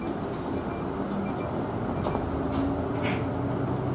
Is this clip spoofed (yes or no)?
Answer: no